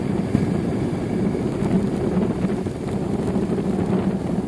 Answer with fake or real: real